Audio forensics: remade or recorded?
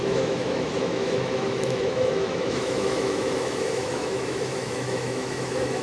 remade